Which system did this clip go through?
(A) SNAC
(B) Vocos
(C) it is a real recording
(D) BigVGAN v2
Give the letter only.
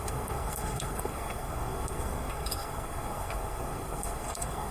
A